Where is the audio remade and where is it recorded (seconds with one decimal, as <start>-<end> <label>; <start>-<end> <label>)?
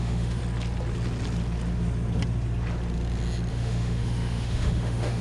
0.0-0.4 remade; 0.4-3.5 recorded; 3.5-5.2 remade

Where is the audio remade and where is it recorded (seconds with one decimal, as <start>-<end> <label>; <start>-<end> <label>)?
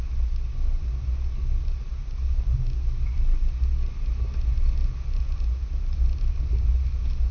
0.0-7.3 recorded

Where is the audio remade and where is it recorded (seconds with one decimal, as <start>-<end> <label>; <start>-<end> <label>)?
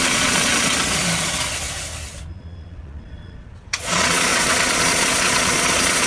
0.0-0.5 remade; 0.5-2.3 recorded; 2.3-6.1 remade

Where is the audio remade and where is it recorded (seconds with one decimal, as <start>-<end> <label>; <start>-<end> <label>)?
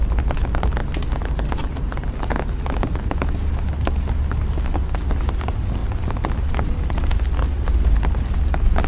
0.0-8.9 recorded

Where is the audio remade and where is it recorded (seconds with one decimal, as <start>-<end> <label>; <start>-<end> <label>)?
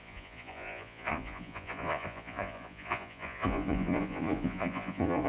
0.0-5.3 remade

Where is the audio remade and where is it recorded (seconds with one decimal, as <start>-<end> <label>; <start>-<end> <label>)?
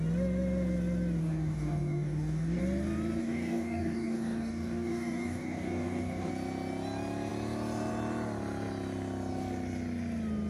0.0-1.2 recorded; 1.2-2.6 remade; 2.6-3.2 recorded; 3.2-6.3 remade; 6.3-10.5 recorded